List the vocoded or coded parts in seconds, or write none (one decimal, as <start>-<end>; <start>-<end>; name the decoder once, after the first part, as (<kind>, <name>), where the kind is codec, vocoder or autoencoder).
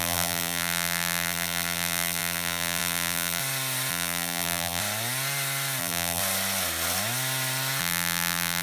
0.0-3.4 (vocoder, BigVGAN v2); 3.9-4.8; 5.8-6.2; 7.8-8.6